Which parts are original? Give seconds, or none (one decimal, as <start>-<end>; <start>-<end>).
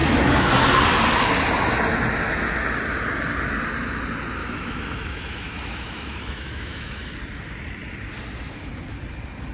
0.5-4.4; 7.1-9.5